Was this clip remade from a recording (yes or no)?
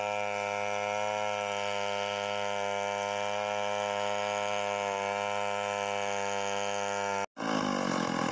no